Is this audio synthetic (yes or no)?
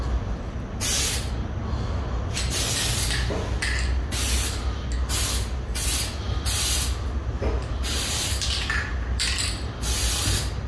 no